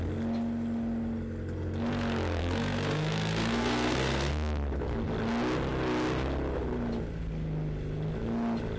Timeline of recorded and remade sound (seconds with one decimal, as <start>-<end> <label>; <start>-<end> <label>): 0.0-2.4 recorded; 2.4-4.3 remade; 4.3-8.8 recorded